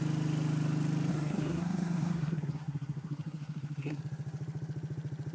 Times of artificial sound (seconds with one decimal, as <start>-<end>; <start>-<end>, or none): 1.1-4.0